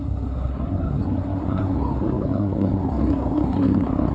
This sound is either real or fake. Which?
fake